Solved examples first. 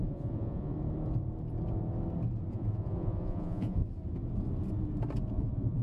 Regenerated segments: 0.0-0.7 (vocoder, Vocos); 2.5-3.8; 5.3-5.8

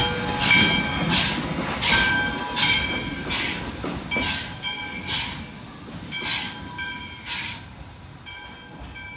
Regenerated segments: none

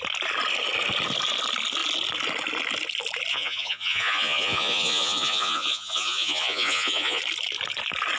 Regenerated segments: 3.3-7.2 (vocoder, Vocos)

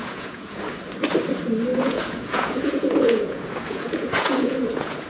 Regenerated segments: 0.0-0.6 (vocoder, Vocos); 1.7-5.1

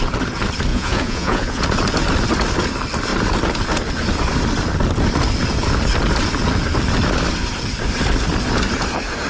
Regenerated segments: 0.7-1.6 (vocoder, Vocos)

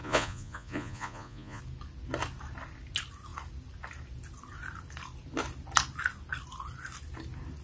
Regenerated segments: 0.0-1.6 (vocoder, Vocos)

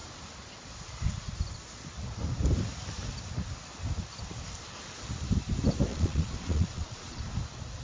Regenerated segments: 5.9-7.2 (vocoder, Vocos)